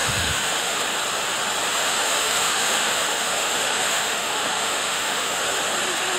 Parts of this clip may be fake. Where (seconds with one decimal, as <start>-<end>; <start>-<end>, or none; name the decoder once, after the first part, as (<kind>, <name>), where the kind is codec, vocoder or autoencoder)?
0.0-0.8 (autoencoder, DAC-VAE); 1.7-5.4